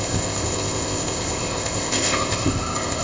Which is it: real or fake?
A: fake